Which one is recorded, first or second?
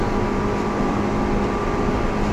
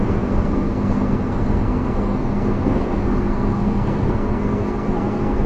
first